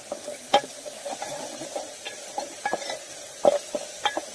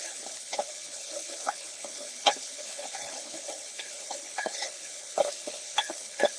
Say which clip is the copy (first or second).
second